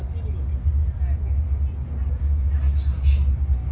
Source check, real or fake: real